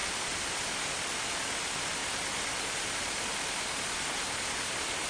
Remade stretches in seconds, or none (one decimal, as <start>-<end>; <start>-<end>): none